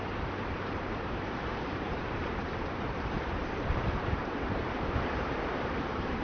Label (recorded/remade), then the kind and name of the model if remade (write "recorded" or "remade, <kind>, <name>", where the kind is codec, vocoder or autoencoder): remade, vocoder, BigVGAN v2